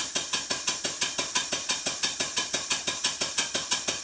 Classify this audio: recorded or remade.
remade